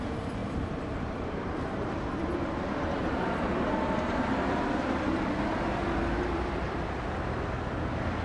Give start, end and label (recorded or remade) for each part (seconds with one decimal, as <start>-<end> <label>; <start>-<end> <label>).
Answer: 0.0-0.4 recorded; 0.4-5.0 remade; 5.0-8.2 recorded